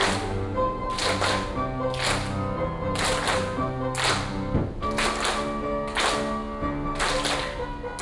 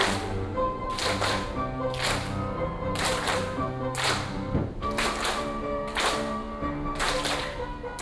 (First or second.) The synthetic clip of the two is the second